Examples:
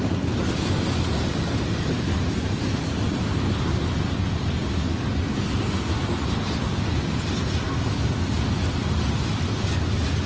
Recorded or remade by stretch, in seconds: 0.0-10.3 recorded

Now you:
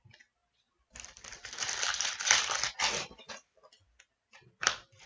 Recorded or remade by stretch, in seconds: 0.0-0.4 recorded; 0.4-3.3 remade; 3.3-5.1 recorded

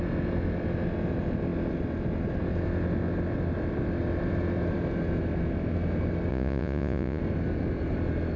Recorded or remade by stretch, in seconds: 0.0-6.3 recorded; 6.3-7.2 remade; 7.2-8.4 recorded

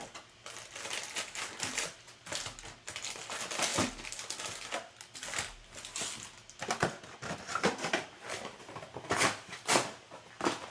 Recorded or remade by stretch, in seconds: 0.0-10.7 recorded

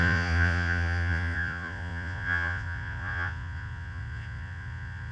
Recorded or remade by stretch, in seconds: 0.0-5.1 remade